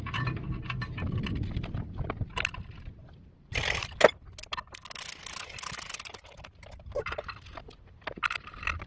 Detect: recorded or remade remade